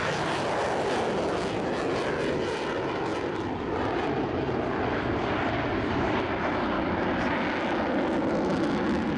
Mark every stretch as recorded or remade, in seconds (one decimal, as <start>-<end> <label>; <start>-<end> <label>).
0.0-9.2 recorded